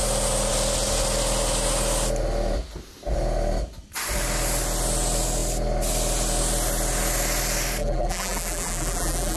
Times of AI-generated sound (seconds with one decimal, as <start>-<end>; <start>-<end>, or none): 7.8-9.4